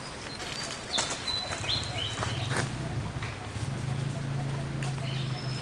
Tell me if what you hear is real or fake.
real